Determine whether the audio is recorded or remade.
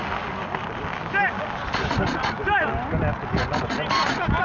recorded